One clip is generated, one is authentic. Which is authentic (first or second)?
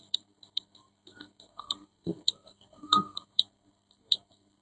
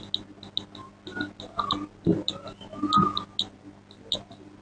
second